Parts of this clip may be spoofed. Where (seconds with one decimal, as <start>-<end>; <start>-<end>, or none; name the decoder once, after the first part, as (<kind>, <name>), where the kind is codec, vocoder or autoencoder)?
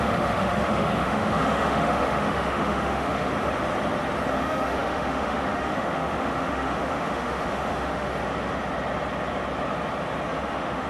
0.0-3.3 (autoencoder, DAC-VAE); 4.3-8.1; 10.4-10.9